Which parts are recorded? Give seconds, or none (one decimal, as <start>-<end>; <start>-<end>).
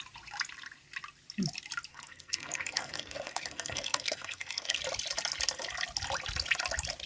0.0-1.9; 4.8-7.1